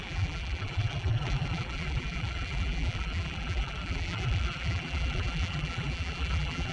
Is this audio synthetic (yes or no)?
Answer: yes